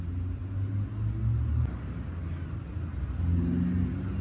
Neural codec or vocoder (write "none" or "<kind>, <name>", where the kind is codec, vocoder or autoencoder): none